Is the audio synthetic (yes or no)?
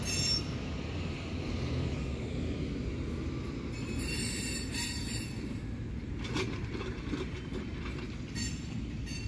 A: no